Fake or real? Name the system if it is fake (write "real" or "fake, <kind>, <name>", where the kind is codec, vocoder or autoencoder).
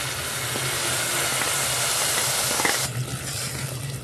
real